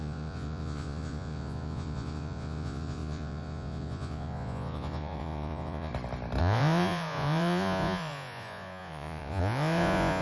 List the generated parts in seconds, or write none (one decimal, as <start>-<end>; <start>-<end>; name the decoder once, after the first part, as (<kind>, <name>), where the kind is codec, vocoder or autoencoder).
0.0-5.9 (vocoder, Vocos); 6.4-10.2